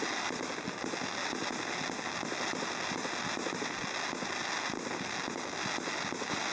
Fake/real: real